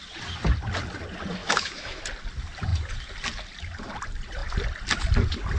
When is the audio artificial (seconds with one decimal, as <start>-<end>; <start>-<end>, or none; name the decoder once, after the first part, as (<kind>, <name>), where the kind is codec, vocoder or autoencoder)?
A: 1.4-2.0 (autoencoder, DAC-VAE)